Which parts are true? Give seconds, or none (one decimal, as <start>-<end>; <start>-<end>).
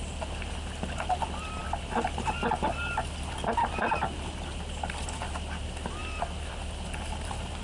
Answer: 0.0-7.6